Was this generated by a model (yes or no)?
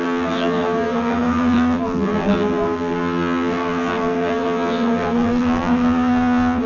yes